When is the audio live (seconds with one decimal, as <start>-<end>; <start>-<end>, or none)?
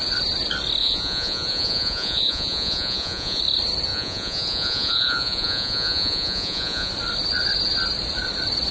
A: 0.0-0.8; 3.4-3.9; 6.9-8.7